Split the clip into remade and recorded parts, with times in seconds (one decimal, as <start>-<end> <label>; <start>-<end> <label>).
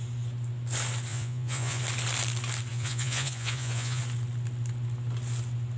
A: 0.0-1.1 recorded; 1.1-1.8 remade; 1.8-2.7 recorded; 2.7-4.0 remade; 4.0-5.8 recorded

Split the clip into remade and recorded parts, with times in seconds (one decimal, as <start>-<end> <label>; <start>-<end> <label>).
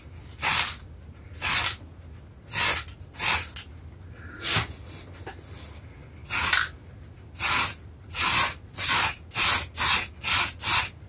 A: 0.0-11.1 recorded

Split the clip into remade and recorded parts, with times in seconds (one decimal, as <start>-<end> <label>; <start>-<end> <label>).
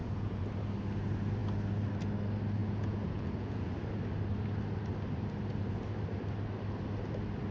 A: 0.0-0.5 remade; 0.5-2.6 recorded; 2.6-3.7 remade; 3.7-7.5 recorded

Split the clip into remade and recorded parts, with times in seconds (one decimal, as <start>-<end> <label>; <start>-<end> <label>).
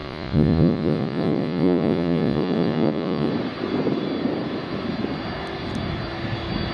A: 0.0-3.3 remade; 3.3-6.7 recorded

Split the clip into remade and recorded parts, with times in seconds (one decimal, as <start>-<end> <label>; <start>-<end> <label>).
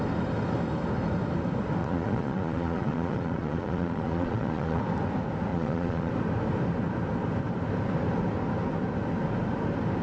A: 0.0-1.8 recorded; 1.8-4.8 remade; 4.8-5.5 recorded; 5.5-6.1 remade; 6.1-10.0 recorded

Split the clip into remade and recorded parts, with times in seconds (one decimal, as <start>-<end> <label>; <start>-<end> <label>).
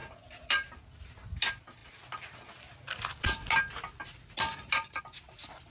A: 0.0-5.7 recorded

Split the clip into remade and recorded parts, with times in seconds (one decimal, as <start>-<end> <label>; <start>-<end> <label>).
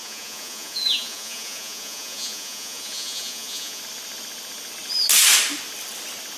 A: 0.0-3.8 remade; 3.8-6.4 recorded